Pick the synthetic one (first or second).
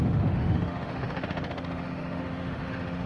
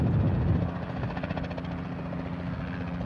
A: first